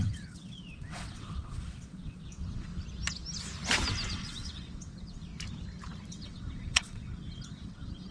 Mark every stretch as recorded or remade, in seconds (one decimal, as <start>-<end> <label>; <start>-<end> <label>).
0.0-2.7 remade; 2.7-4.1 recorded; 4.1-5.3 remade; 5.3-6.1 recorded; 6.1-8.1 remade